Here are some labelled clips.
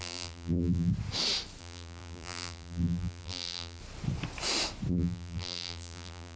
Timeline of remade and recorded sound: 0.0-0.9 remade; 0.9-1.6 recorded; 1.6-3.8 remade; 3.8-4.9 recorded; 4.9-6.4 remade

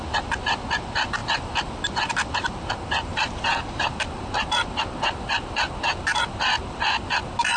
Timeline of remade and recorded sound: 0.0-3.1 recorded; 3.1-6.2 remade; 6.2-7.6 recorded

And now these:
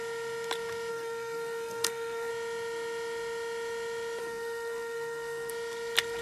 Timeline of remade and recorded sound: 0.0-0.9 recorded; 0.9-2.3 remade; 2.3-4.2 recorded; 4.2-5.5 remade; 5.5-6.2 recorded

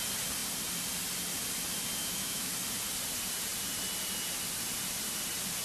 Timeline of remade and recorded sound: 0.0-2.0 recorded; 2.0-2.5 remade; 2.5-5.6 recorded

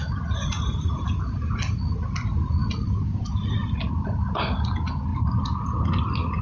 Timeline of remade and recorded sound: 0.0-6.4 recorded

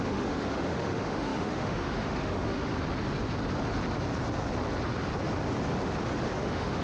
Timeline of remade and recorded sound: 0.0-2.7 remade; 2.7-6.3 recorded; 6.3-6.8 remade

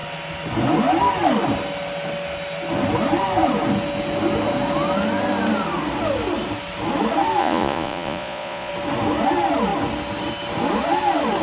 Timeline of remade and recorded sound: 0.0-7.4 recorded; 7.4-8.7 remade; 8.7-11.4 recorded